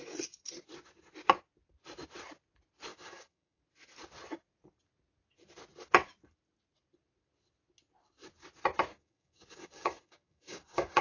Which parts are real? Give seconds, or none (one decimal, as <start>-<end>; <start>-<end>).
0.0-2.9; 3.6-8.9

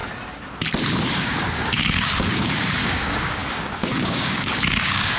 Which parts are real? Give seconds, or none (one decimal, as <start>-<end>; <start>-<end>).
0.0-1.2

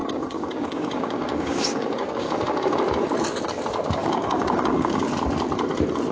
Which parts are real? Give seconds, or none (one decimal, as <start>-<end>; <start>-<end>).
2.3-4.0; 5.0-6.1

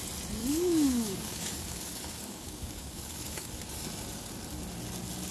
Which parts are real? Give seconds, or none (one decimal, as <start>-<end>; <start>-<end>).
0.0-0.4; 3.6-5.3